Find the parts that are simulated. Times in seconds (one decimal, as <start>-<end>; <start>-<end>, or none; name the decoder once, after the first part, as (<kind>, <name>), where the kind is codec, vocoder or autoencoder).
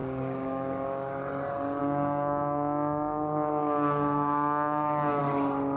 0.0-1.2 (codec, DAC); 1.8-5.2